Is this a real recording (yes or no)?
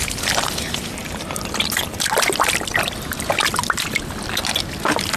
yes